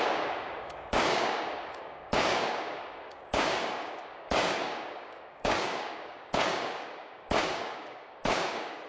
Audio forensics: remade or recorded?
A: remade